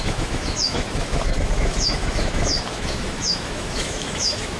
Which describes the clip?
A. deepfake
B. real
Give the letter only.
A